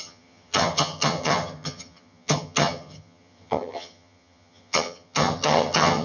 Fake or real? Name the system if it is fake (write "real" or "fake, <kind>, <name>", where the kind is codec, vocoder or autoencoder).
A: fake, vocoder, HiFi-GAN